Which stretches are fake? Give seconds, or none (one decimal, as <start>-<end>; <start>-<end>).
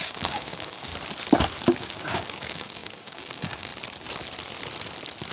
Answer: 0.0-0.9; 1.8-3.7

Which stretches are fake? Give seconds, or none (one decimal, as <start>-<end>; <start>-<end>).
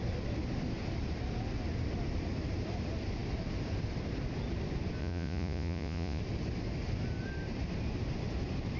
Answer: 5.0-6.2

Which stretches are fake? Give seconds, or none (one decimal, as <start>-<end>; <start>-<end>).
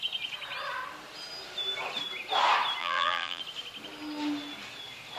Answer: 2.8-3.4